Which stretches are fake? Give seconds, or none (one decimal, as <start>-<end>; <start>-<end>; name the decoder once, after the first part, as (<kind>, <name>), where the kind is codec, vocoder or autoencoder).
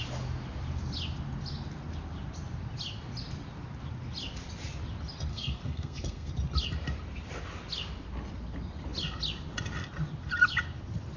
5.3-6.3 (codec, SNAC)